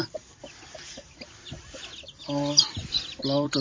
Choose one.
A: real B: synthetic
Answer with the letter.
B